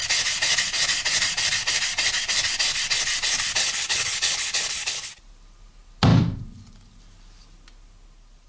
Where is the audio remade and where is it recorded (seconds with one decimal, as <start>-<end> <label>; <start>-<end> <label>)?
0.0-3.6 recorded; 3.6-5.1 remade; 5.1-8.5 recorded